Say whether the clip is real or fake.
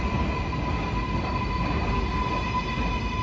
real